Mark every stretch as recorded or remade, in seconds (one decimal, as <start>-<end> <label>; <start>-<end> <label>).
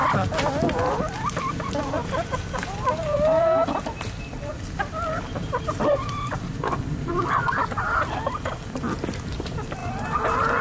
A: 0.0-2.0 remade; 2.0-3.4 recorded; 3.4-9.8 remade; 9.8-10.6 recorded